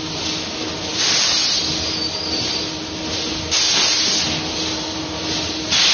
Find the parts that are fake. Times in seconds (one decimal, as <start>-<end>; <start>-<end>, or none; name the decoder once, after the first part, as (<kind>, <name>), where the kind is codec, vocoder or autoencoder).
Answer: none